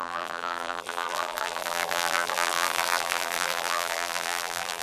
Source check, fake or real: fake